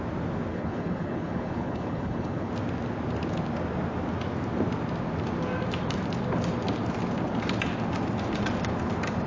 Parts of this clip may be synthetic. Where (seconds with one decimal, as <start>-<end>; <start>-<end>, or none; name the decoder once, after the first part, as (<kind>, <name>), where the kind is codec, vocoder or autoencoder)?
0.5-2.5 (codec, HILCodec)

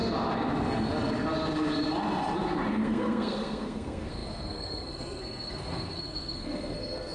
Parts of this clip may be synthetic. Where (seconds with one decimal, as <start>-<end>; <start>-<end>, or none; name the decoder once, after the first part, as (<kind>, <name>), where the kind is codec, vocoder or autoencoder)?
2.7-7.1 (codec, SNAC)

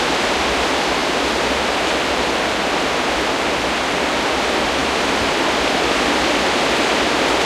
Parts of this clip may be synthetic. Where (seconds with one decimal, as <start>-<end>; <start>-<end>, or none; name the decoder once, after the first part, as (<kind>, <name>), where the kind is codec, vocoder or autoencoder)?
1.0-4.0 (vocoder, BigVGAN v2); 4.8-6.1

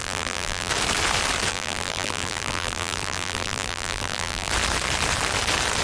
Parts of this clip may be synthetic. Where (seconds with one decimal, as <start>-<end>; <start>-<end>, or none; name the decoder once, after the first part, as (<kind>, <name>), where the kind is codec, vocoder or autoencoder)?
0.0-0.7 (vocoder, BigVGAN v2); 1.5-4.5